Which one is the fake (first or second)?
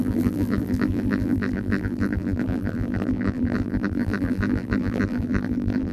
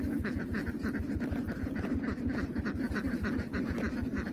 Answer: first